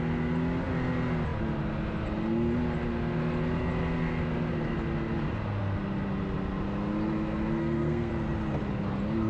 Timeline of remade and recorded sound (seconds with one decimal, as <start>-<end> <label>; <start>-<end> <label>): 0.0-7.6 recorded; 7.6-8.1 remade; 8.1-9.3 recorded